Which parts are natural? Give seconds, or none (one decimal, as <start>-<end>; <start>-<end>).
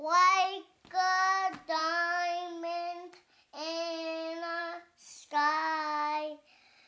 0.7-6.9